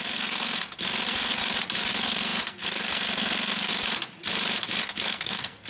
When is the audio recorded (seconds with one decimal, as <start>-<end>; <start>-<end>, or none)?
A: 1.4-1.9; 3.7-4.8